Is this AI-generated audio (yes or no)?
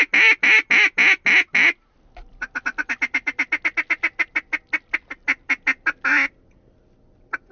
no